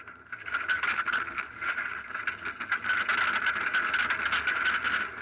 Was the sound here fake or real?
real